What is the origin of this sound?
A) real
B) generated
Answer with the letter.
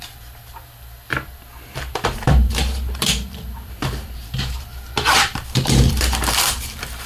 B